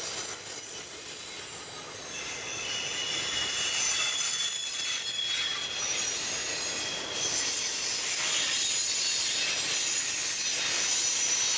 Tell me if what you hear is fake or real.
real